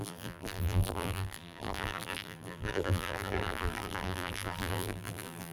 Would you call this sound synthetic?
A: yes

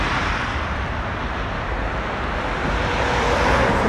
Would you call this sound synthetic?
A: no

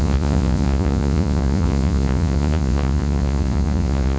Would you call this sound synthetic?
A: yes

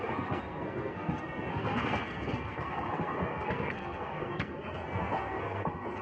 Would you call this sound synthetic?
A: yes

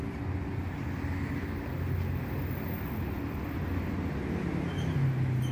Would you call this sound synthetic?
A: no